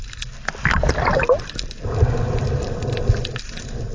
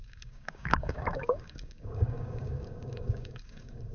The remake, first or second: second